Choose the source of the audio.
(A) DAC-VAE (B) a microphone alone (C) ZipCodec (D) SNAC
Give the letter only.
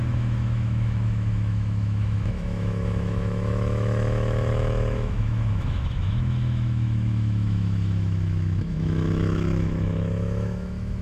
A